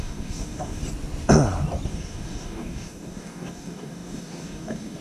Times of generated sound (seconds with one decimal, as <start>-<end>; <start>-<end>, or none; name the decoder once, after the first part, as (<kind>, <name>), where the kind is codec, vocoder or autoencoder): 0.0-0.8 (codec, DAC); 1.9-5.0